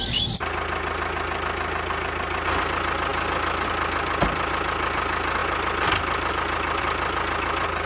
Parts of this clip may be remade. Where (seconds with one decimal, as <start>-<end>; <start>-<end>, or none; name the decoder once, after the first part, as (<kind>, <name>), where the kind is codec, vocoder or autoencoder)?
none